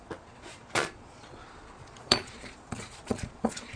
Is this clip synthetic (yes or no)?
yes